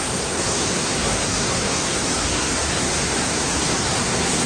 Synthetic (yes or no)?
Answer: yes